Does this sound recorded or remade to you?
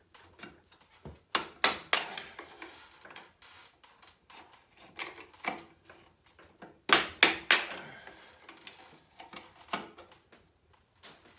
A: recorded